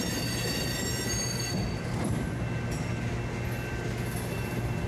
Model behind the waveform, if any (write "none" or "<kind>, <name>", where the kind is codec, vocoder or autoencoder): none